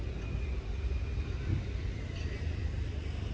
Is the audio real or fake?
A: real